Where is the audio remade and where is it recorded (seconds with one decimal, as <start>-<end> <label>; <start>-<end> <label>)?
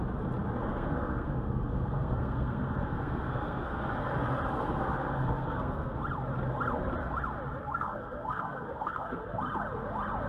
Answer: 0.0-0.7 recorded; 0.7-3.9 remade; 3.9-4.5 recorded; 4.5-6.0 remade; 6.0-7.6 recorded; 7.6-9.4 remade; 9.4-10.3 recorded